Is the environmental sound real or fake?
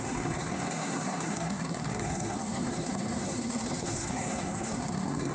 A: fake